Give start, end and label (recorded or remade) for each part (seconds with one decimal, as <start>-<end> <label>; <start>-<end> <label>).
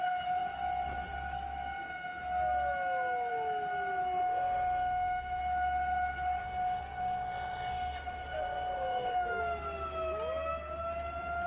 0.0-4.2 recorded; 4.2-5.4 remade; 5.4-6.4 recorded; 6.4-9.4 remade; 9.4-11.5 recorded